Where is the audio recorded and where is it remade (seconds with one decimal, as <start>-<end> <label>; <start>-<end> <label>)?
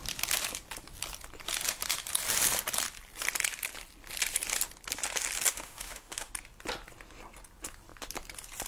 0.0-5.5 recorded; 5.5-6.3 remade; 6.3-8.7 recorded